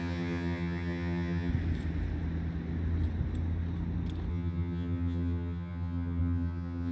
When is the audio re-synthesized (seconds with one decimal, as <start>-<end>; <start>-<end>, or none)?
0.0-1.5; 4.3-6.9